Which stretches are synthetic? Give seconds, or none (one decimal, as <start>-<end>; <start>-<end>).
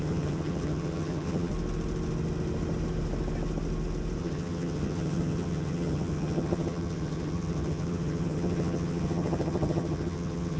0.0-1.5; 4.2-10.6